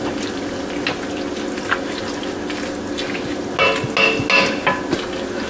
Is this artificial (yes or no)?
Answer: no